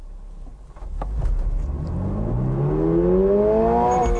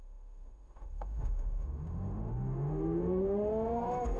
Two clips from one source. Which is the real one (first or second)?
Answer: first